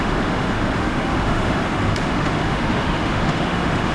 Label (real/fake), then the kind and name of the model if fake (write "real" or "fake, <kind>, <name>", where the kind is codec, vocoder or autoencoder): fake, autoencoder, DAC-VAE